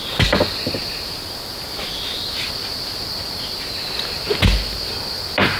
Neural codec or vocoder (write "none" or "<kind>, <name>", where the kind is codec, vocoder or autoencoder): none